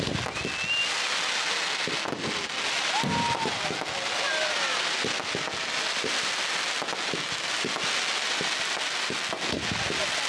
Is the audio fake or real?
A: real